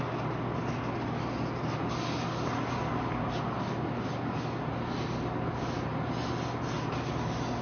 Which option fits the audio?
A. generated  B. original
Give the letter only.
B